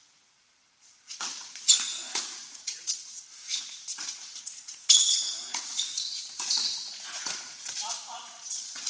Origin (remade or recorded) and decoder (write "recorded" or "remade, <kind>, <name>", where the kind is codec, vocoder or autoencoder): remade, vocoder, Vocos